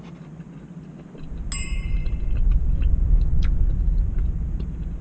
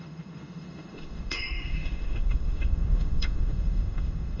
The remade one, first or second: second